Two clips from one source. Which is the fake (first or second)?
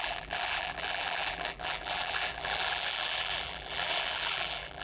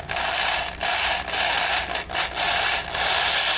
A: first